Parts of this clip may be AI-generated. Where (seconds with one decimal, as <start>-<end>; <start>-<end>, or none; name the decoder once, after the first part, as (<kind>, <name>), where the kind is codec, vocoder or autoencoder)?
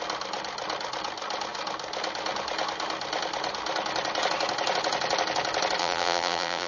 5.8-6.7 (vocoder, BigVGAN v2)